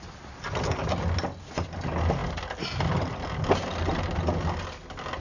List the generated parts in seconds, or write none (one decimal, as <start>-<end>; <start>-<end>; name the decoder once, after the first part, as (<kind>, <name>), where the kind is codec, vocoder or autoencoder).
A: none

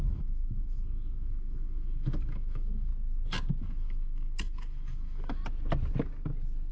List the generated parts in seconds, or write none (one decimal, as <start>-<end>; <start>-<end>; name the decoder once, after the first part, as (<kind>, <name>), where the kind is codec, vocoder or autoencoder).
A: 0.0-2.9 (autoencoder, DAC-VAE); 3.6-5.4

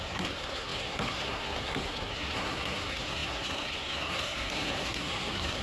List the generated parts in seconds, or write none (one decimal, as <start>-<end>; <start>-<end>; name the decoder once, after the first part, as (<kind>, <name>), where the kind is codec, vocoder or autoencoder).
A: 0.0-5.6 (codec, SNAC)

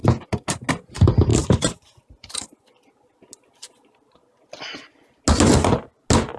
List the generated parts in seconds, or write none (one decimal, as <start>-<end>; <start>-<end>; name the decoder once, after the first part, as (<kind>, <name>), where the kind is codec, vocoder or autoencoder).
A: none

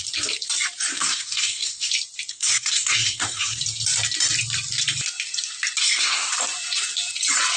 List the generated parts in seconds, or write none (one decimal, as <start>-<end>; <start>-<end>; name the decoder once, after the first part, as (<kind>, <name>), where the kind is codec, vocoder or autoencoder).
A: 0.9-1.9 (codec, SNAC); 2.3-3.6; 5.8-6.3